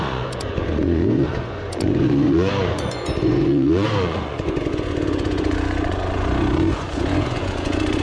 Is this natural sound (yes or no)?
no